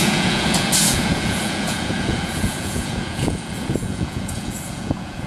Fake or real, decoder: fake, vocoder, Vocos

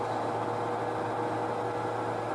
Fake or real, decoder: real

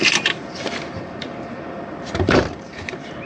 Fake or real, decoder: fake, vocoder, BigVGAN v2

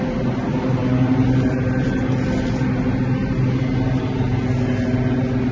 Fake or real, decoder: real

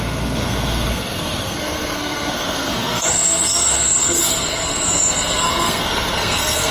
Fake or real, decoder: fake, codec, SNAC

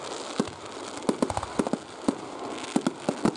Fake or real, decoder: real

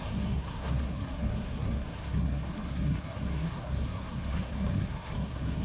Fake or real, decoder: fake, codec, SNAC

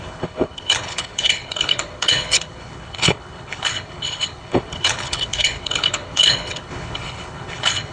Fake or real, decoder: fake, codec, HILCodec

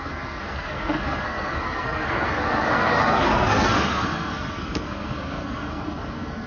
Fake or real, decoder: fake, codec, SNAC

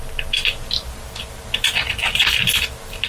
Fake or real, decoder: real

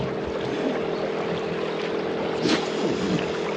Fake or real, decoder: real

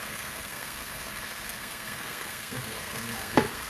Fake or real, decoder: fake, codec, SNAC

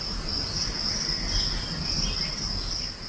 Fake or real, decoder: real